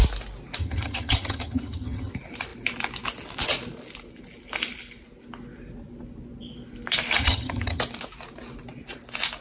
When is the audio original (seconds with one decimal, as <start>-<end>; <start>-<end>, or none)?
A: 0.0-0.6; 2.1-7.2; 7.8-9.4